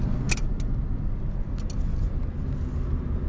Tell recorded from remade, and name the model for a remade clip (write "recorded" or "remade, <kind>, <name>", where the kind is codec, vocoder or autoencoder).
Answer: recorded